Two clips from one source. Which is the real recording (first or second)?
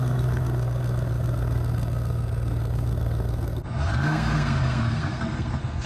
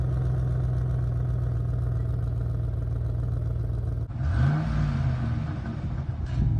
second